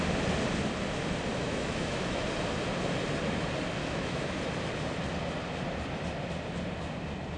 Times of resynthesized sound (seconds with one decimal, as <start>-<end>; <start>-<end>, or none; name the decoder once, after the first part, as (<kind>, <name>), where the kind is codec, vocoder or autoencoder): 1.4-2.2 (autoencoder, DAC-VAE); 3.8-4.4